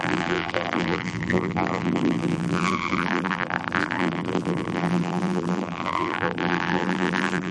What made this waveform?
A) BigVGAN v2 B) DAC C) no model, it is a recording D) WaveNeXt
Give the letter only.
A